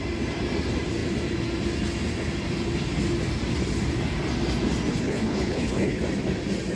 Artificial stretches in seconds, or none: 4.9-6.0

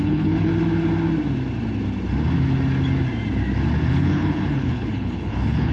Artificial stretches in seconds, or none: 0.0-0.5; 3.9-5.7

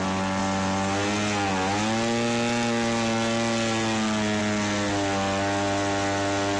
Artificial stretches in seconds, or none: none

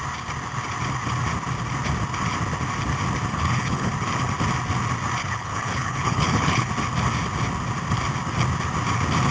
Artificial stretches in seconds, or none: 3.3-3.9; 5.2-6.7

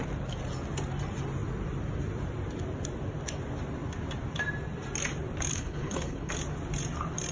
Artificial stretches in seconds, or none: 5.5-6.3

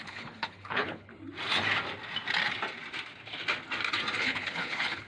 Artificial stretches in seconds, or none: 0.0-1.1; 4.2-5.1

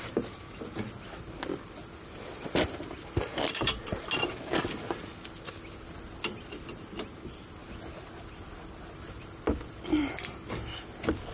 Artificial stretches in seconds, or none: none